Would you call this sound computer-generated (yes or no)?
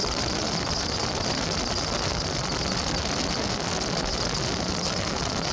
no